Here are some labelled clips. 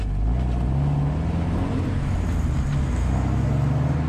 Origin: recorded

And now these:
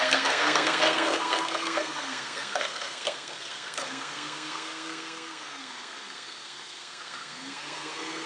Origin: remade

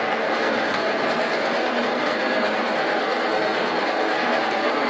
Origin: remade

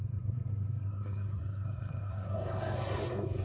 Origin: remade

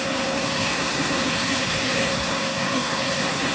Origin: remade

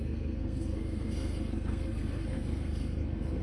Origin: remade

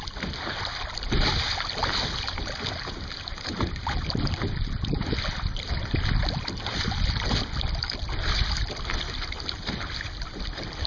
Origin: recorded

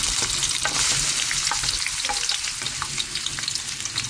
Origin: recorded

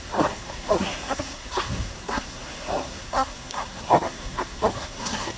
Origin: remade